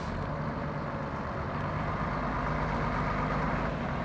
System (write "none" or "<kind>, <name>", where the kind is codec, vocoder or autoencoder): none